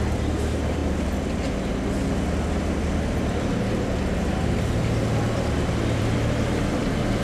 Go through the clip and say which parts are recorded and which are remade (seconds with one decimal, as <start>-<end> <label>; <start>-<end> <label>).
0.0-0.8 remade; 0.8-2.5 recorded; 2.5-7.2 remade